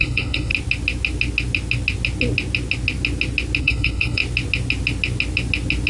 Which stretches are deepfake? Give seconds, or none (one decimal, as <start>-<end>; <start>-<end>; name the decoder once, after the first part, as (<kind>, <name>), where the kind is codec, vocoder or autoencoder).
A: 0.0-0.5 (codec, HILCodec); 3.6-4.2

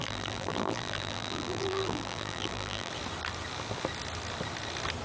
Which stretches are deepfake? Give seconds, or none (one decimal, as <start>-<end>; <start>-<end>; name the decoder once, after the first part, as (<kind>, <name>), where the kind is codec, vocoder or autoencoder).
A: 0.0-2.9 (vocoder, BigVGAN v2)

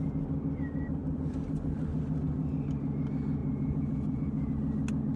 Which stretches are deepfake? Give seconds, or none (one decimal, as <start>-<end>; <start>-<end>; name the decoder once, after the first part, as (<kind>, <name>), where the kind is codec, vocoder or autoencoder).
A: 3.4-4.5 (vocoder, Vocos)